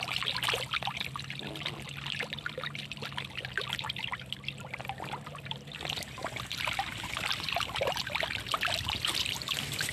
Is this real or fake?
real